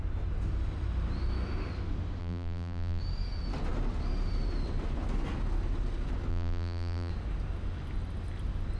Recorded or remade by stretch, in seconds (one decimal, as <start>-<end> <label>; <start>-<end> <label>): 0.0-2.2 recorded; 2.2-3.0 remade; 3.0-6.3 recorded; 6.3-7.1 remade; 7.1-8.8 recorded